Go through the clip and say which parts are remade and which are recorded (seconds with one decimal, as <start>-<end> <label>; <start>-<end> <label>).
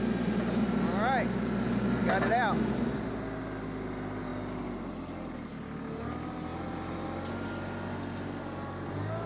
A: 0.0-9.3 recorded